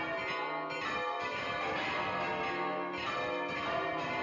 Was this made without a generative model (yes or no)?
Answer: yes